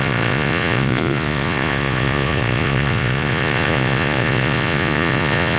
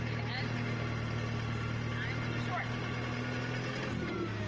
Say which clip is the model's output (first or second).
first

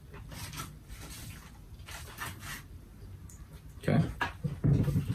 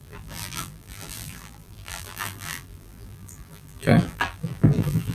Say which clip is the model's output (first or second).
second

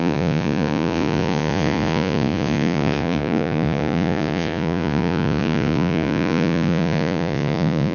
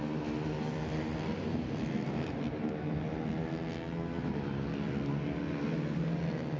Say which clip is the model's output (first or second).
first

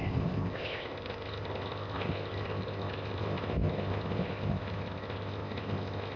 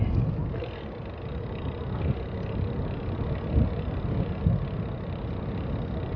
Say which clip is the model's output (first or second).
first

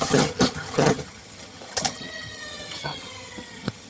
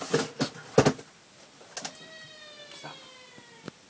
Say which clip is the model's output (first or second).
first